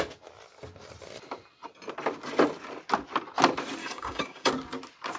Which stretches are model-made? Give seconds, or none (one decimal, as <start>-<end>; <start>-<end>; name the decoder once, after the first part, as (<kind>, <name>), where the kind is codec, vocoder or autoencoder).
3.8-4.5 (codec, DAC)